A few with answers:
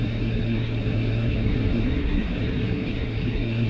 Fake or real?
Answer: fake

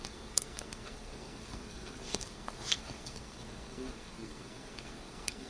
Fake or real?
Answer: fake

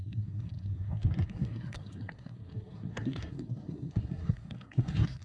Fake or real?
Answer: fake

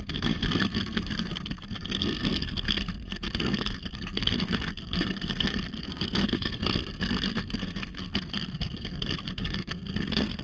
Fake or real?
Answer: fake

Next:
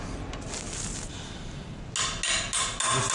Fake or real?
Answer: real